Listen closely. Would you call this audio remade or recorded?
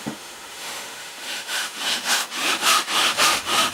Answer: remade